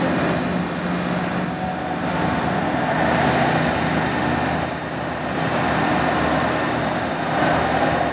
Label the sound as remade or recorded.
recorded